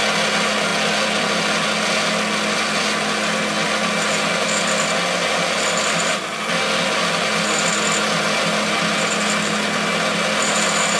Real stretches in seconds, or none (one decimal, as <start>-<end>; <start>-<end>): 0.0-11.0